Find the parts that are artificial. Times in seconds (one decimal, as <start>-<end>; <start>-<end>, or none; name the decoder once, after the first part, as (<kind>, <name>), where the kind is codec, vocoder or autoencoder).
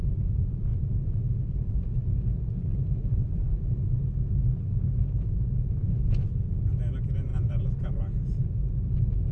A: 7.3-8.0 (vocoder, BigVGAN v2)